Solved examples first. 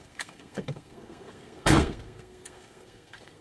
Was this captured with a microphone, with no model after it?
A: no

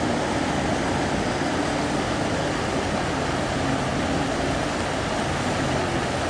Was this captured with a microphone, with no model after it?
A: yes